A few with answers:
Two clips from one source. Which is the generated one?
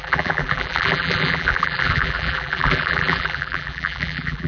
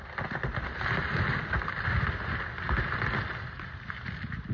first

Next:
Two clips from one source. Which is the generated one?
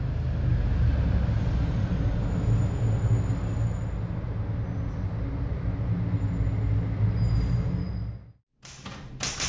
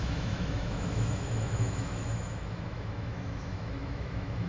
second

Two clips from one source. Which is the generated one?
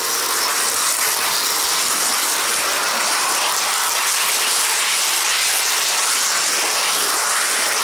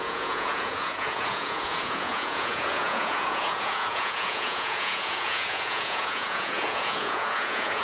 second